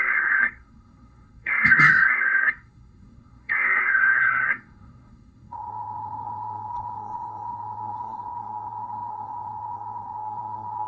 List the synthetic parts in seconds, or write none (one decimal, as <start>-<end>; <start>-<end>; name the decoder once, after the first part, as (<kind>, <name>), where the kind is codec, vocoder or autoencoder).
0.0-10.9 (codec, SNAC)